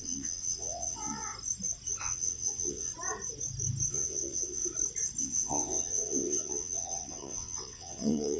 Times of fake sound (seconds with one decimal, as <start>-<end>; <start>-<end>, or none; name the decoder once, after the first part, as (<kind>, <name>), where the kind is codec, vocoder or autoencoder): 0.0-1.3 (vocoder, WaveNeXt); 2.0-2.9; 3.9-4.6; 5.2-8.4